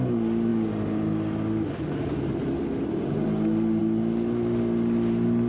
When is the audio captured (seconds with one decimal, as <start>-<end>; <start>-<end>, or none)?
0.0-5.5